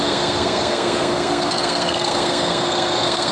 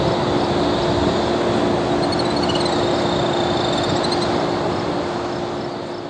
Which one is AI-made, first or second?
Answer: first